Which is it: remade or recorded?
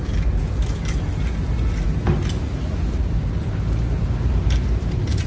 recorded